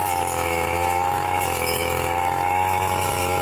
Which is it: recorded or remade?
remade